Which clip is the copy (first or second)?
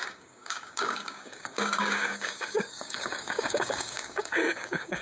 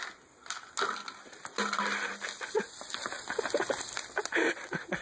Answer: first